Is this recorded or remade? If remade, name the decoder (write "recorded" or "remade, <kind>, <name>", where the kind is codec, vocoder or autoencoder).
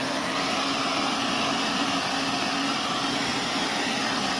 recorded